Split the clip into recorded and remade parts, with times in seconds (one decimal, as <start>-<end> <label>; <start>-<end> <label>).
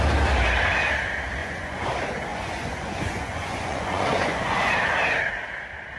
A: 0.0-1.4 recorded; 1.4-1.9 remade; 1.9-2.3 recorded; 2.3-4.7 remade; 4.7-6.0 recorded